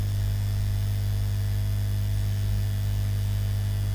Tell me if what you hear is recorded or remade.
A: recorded